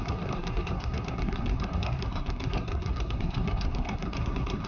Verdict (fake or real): fake